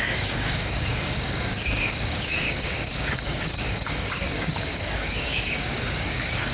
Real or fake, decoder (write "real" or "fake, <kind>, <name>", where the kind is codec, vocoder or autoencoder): fake, codec, DAC